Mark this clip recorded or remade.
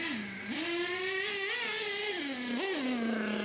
recorded